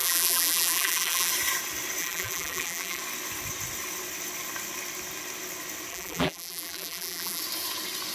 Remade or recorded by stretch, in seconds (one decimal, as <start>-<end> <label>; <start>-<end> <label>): 0.0-1.3 remade; 1.3-2.0 recorded; 2.0-3.0 remade; 3.0-5.9 recorded; 5.9-7.4 remade; 7.4-8.1 recorded